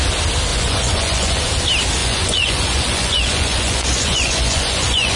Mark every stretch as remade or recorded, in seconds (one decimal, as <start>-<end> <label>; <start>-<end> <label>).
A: 0.0-0.5 recorded; 0.5-1.4 remade; 1.4-2.0 recorded; 2.0-5.2 remade